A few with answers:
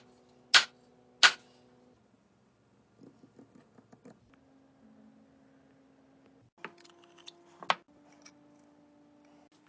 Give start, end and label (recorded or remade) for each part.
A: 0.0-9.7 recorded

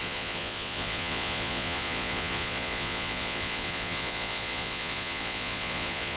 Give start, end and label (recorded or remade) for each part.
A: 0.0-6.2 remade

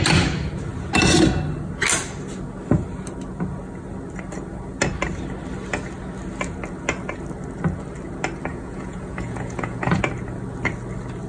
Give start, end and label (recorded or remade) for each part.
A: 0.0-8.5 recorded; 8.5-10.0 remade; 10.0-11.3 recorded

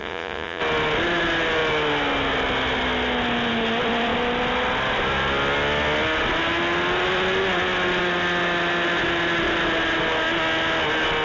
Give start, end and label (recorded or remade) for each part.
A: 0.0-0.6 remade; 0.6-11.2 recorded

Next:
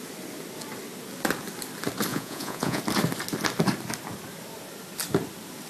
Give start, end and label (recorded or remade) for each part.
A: 0.0-2.1 recorded; 2.1-2.8 remade; 2.8-5.7 recorded

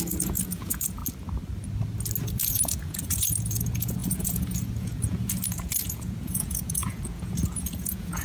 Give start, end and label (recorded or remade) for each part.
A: 0.0-1.0 remade; 1.0-2.3 recorded; 2.3-8.2 remade